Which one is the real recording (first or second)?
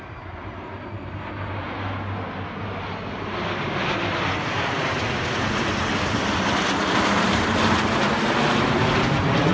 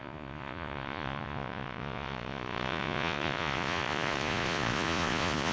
first